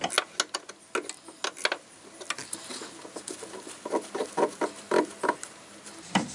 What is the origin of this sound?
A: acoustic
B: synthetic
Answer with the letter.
A